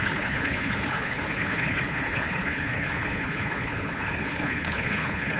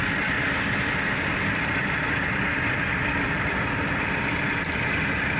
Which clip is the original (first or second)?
second